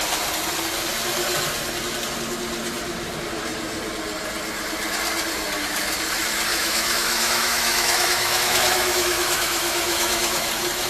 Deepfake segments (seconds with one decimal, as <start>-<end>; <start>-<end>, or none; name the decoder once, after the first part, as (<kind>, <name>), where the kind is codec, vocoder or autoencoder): 6.5-10.5 (autoencoder, DAC-VAE)